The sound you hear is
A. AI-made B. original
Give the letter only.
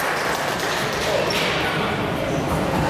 A